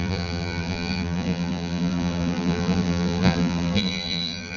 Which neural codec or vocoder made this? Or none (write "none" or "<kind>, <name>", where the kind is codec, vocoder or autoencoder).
vocoder, BigVGAN v2